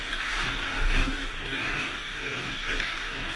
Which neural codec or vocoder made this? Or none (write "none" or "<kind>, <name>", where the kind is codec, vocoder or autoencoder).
codec, DAC